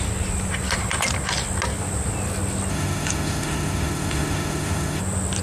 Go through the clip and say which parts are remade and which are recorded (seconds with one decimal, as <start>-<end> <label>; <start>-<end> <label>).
0.0-2.7 recorded; 2.7-5.0 remade; 5.0-5.4 recorded